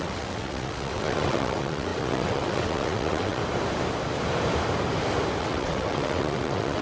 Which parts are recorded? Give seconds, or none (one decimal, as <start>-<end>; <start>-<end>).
3.4-5.4